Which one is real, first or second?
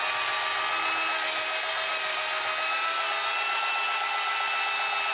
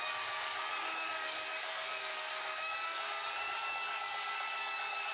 first